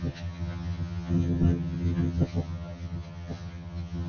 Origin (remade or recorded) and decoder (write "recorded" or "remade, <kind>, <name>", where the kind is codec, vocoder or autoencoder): remade, vocoder, HiFi-GAN